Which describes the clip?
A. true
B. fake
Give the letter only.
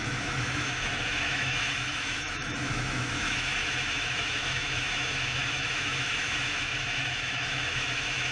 B